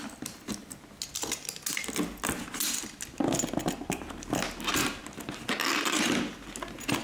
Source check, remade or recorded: recorded